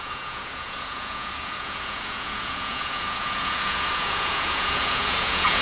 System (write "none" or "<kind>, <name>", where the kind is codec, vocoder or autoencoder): vocoder, Vocos